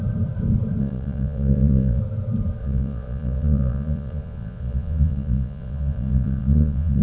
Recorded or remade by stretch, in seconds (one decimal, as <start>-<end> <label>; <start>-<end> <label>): 0.0-0.8 recorded; 0.8-2.0 remade; 2.0-2.6 recorded; 2.6-7.0 remade

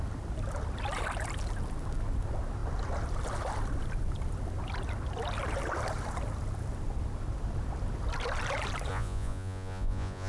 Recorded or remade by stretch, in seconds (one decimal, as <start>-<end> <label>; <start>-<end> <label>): 0.0-8.9 recorded; 8.9-10.3 remade

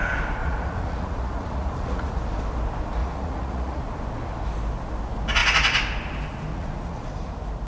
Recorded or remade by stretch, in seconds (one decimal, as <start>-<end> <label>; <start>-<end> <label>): 0.0-0.4 recorded; 0.4-2.2 remade; 2.2-3.0 recorded; 3.0-3.8 remade; 3.8-6.5 recorded; 6.5-7.1 remade; 7.1-7.7 recorded

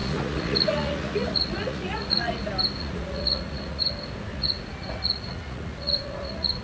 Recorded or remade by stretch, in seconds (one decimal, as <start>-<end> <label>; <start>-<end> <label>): 0.0-2.4 remade; 2.4-2.8 recorded; 2.8-3.9 remade; 3.9-4.3 recorded; 4.3-6.6 remade

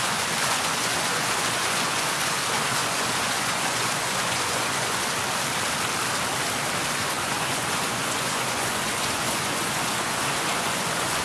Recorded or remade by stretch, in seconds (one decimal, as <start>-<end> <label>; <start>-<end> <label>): 0.0-5.0 remade; 5.0-6.9 recorded; 6.9-11.2 remade